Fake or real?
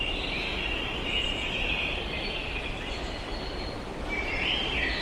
real